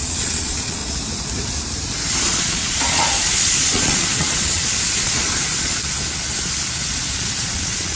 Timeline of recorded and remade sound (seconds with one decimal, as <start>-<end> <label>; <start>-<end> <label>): 0.0-0.8 remade; 0.8-2.2 recorded; 2.2-5.8 remade; 5.8-6.9 recorded; 6.9-8.0 remade